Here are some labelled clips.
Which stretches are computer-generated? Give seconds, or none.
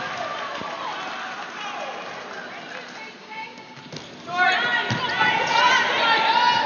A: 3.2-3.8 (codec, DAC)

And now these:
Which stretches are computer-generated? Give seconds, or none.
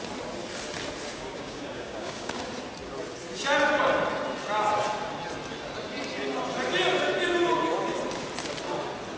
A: 1.1-2.4 (codec, DAC)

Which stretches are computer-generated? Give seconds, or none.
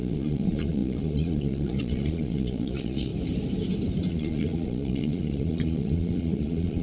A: 0.0-3.1 (vocoder, Vocos); 4.1-6.8